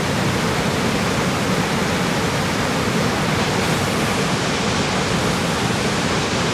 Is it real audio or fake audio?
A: real